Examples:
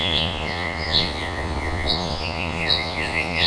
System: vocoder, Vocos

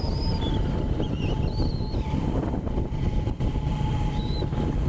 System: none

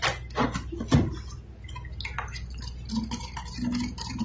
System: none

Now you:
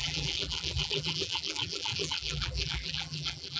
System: vocoder, BigVGAN v2